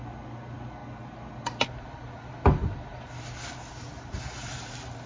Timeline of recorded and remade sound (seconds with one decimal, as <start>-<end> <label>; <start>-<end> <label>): 0.0-5.1 recorded